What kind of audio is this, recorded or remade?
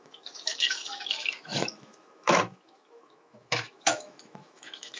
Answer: remade